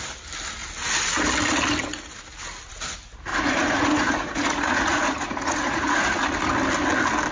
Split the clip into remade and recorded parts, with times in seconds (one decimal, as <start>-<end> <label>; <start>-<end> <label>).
0.0-3.3 recorded; 3.3-6.2 remade; 6.2-7.3 recorded